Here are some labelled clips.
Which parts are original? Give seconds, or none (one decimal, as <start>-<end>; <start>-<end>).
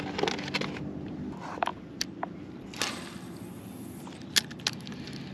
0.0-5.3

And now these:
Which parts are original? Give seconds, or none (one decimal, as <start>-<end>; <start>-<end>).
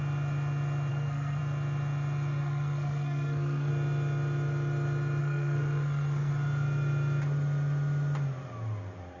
0.0-0.9; 1.4-2.4; 3.7-5.2; 6.3-9.2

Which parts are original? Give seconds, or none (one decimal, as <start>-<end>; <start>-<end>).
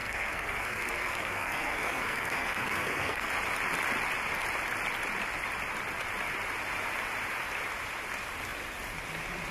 3.3-9.5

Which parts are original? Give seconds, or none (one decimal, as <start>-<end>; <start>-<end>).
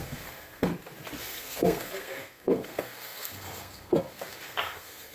0.7-1.2